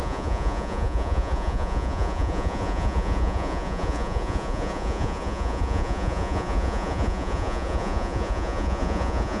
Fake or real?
fake